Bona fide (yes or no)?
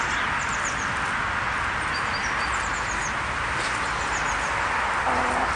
yes